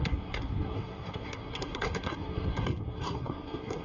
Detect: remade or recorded remade